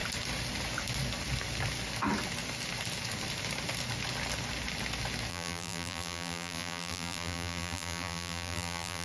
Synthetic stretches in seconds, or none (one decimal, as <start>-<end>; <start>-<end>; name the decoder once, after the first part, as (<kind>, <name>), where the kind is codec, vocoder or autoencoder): 5.3-9.0 (vocoder, BigVGAN v2)

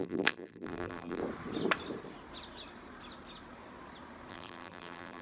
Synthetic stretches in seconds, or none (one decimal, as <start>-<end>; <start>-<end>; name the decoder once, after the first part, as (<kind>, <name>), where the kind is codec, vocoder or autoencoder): 0.0-1.2 (vocoder, BigVGAN v2); 4.3-5.2

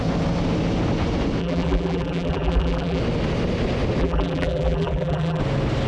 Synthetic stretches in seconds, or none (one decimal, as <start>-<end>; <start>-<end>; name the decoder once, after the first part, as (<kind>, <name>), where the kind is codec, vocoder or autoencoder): 1.4-3.0 (vocoder, BigVGAN v2); 4.0-5.4

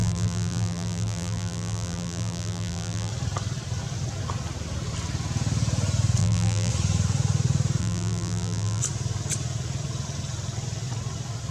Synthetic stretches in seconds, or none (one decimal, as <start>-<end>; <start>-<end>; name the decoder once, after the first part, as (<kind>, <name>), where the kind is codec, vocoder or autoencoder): 0.0-3.1 (vocoder, BigVGAN v2); 6.2-6.7; 7.8-8.8